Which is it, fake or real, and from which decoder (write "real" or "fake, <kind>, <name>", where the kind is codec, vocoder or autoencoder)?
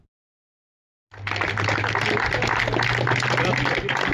real